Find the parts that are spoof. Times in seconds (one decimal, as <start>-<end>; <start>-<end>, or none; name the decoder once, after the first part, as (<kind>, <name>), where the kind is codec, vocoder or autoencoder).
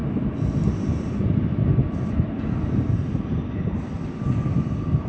3.1-3.6 (vocoder, BigVGAN v2)